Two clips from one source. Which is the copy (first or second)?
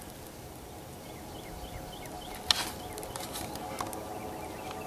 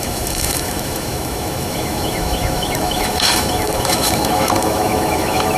second